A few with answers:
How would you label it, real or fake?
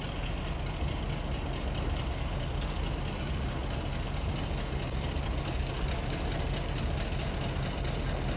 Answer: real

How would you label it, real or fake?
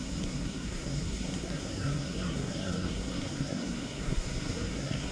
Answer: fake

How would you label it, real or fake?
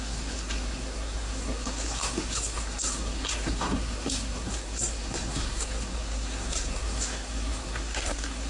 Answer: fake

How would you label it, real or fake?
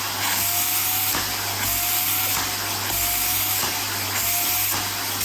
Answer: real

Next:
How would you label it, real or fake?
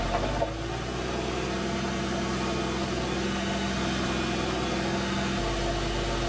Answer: real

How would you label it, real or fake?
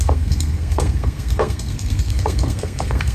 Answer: fake